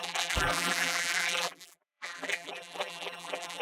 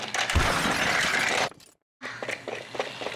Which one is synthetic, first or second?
first